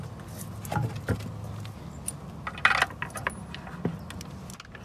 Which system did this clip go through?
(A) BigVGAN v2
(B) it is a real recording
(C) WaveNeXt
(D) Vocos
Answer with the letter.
B